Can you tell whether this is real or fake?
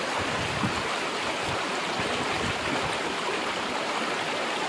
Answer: real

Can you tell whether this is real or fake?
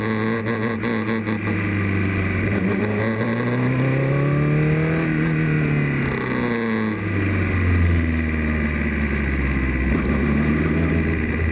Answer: real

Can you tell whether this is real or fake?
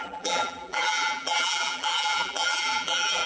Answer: fake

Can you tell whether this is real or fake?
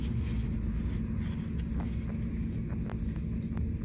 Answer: real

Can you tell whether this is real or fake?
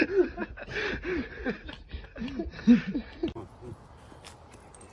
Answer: real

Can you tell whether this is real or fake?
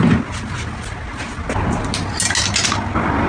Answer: real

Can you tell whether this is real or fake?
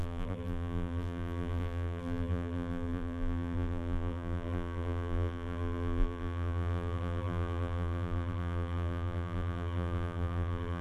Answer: fake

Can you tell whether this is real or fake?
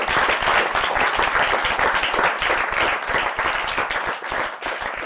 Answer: real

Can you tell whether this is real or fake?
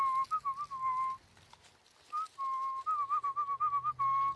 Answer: real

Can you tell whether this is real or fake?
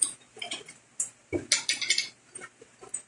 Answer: real